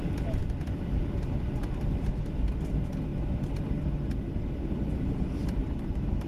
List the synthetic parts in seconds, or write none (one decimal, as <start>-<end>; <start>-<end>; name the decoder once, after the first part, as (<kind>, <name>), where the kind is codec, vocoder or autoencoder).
5.6-6.3 (vocoder, BigVGAN v2)